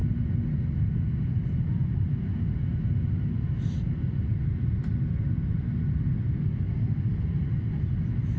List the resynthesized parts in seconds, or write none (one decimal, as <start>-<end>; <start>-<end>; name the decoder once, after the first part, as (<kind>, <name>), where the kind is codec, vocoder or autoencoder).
none